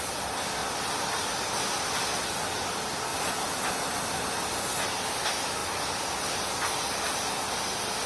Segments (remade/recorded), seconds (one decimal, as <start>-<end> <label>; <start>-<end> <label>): 0.0-8.1 recorded